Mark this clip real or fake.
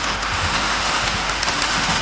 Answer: fake